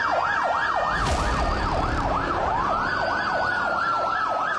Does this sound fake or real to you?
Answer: real